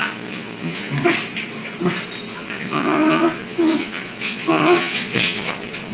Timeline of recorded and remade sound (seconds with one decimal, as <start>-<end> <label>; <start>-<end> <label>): 0.0-0.9 remade; 0.9-2.3 recorded; 2.3-5.9 remade